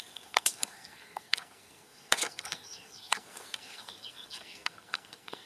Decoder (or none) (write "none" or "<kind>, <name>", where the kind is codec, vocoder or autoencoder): codec, SNAC